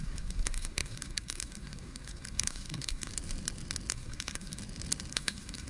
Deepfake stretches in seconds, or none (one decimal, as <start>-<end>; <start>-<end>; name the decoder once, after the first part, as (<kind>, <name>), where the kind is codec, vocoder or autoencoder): 0.0-3.1 (codec, SNAC); 3.9-4.6; 5.1-5.7